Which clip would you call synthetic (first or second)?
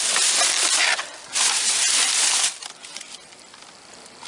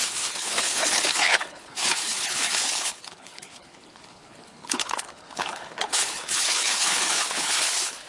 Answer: second